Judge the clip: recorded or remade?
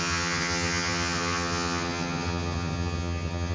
remade